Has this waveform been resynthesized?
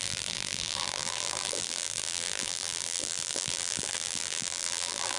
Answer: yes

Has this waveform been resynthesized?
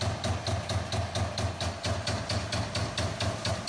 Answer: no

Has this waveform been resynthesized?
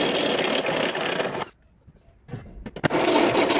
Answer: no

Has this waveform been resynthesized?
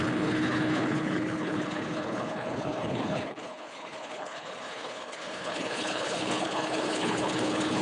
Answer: yes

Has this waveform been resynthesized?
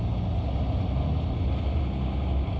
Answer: no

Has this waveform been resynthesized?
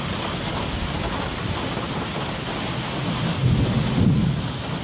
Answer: no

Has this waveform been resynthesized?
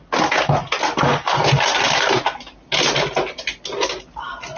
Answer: no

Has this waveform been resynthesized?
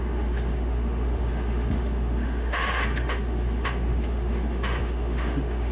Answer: yes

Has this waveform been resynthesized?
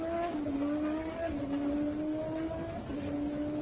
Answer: no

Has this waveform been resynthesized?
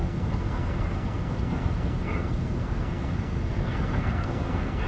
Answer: yes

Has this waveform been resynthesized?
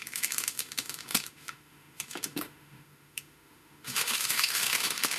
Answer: yes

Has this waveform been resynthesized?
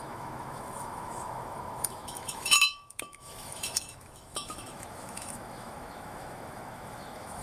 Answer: yes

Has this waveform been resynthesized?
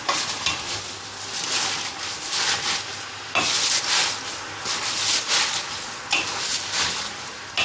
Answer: no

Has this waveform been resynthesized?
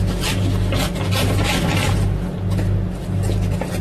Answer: no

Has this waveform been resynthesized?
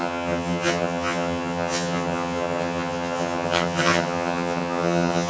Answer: yes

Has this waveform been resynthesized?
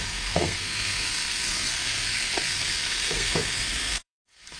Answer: yes